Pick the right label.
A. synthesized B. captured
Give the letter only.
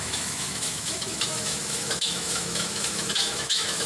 A